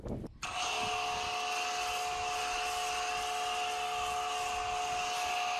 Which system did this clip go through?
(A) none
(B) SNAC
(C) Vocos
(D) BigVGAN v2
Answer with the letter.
A